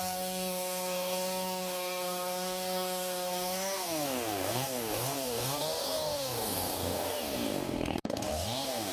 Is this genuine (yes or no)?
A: no